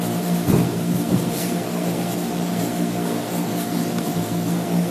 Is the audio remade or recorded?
remade